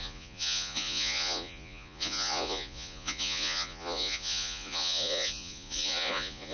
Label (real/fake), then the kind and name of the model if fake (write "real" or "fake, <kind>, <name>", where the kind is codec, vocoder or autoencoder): fake, vocoder, Vocos